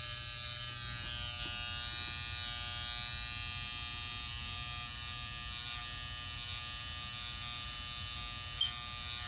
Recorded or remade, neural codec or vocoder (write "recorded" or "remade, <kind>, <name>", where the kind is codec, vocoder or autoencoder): recorded